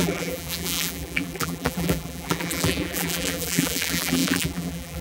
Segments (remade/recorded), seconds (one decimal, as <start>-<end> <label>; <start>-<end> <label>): 0.0-5.0 remade